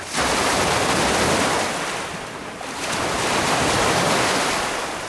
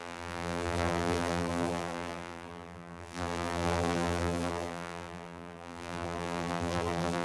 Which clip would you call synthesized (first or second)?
second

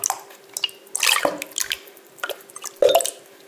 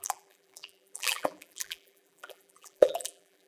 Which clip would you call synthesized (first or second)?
second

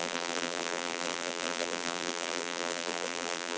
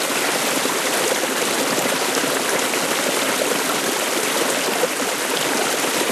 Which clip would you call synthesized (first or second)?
first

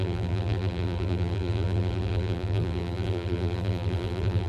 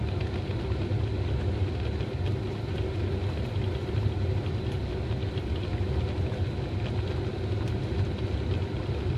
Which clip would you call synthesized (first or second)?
first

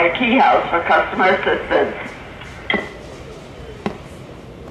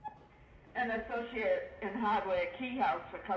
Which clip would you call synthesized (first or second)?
first